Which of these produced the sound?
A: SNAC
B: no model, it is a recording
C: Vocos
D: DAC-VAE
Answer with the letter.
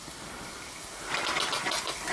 B